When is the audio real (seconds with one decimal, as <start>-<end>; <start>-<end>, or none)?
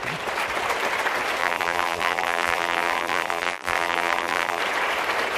0.0-1.4; 4.6-5.4